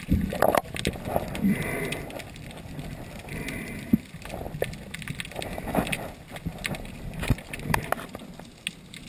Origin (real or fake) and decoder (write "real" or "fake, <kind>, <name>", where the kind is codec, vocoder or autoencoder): real